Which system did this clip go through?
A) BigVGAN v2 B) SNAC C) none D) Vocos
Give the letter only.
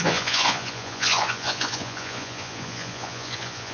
D